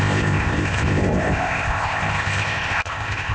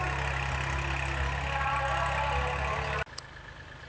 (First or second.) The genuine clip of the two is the second